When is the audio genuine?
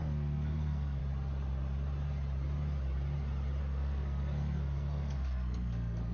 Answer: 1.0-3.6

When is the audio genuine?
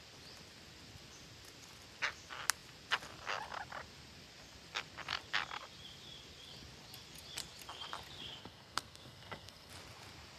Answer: 0.0-8.4; 9.7-10.4